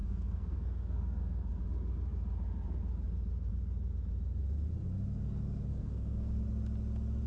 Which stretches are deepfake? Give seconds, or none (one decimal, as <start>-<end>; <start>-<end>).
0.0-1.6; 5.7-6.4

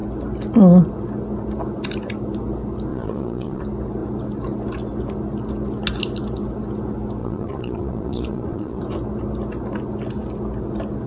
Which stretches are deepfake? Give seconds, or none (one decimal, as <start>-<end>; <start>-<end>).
2.9-3.6; 7.2-8.8

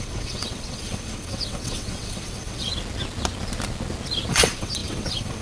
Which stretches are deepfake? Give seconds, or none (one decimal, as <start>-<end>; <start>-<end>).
0.0-2.7; 4.3-5.4

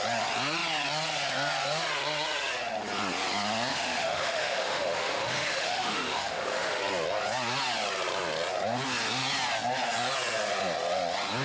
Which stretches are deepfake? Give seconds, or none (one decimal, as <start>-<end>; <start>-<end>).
3.7-6.8

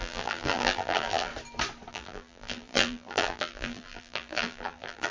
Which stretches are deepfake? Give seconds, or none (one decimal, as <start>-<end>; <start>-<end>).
0.0-1.3; 1.9-5.1

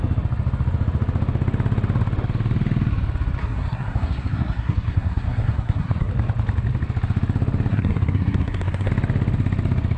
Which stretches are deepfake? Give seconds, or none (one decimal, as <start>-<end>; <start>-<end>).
3.4-6.1; 7.7-8.9

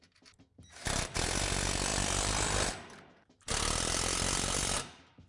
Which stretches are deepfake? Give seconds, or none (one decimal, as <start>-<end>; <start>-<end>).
1.9-5.3